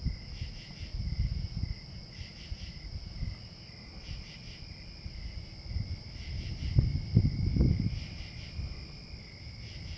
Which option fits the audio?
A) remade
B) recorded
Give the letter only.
B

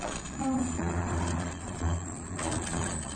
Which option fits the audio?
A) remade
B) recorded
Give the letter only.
A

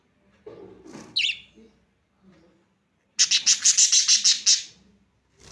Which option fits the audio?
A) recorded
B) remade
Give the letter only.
A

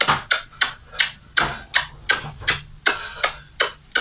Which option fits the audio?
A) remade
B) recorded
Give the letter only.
B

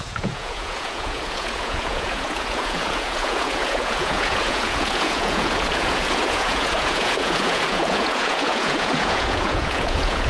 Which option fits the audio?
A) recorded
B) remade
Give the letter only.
B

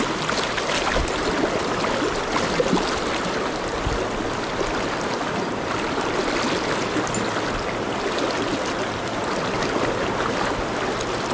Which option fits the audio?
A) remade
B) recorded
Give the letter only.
B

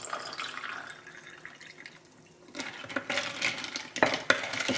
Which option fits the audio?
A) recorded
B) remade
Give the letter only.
A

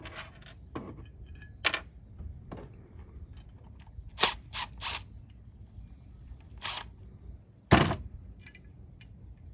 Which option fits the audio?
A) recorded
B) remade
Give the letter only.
A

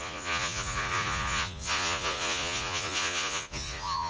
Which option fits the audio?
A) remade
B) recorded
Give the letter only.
A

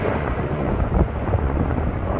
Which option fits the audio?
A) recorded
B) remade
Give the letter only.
B